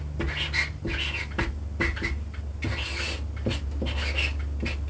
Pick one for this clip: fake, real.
real